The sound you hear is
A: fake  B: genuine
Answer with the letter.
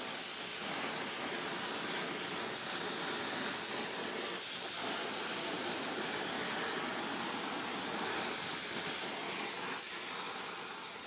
B